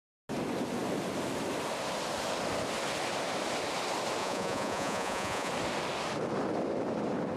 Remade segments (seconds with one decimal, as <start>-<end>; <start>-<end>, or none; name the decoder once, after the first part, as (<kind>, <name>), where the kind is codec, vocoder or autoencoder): 4.2-5.5 (vocoder, Vocos)